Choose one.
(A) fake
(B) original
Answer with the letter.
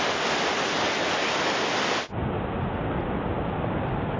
B